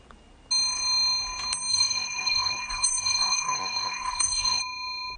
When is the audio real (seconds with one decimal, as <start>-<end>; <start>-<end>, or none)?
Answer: 0.0-1.7; 4.6-5.2

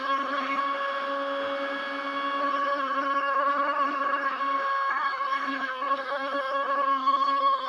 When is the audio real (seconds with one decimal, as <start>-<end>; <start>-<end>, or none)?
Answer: 0.6-2.4; 4.4-4.9

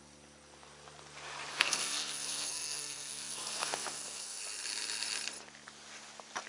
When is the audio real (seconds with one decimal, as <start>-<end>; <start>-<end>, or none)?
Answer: 0.0-1.5; 4.4-6.5